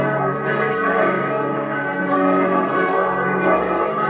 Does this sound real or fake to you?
fake